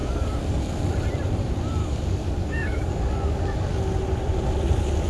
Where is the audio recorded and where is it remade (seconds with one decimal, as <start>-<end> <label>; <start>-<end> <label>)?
0.0-0.6 remade; 0.6-1.8 recorded; 1.8-3.8 remade; 3.8-5.1 recorded

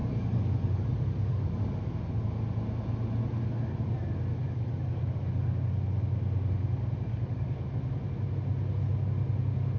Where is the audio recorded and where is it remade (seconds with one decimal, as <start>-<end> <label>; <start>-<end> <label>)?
0.0-1.6 remade; 1.6-4.4 recorded; 4.4-5.2 remade; 5.2-7.1 recorded; 7.1-7.7 remade; 7.7-9.8 recorded